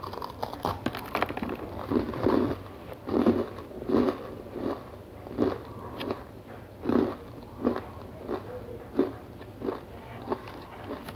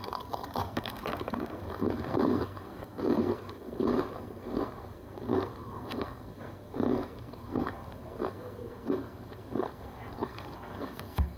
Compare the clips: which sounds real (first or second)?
first